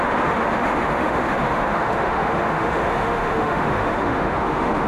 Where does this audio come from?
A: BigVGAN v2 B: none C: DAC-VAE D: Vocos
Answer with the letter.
C